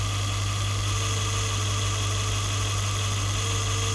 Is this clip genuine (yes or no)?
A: yes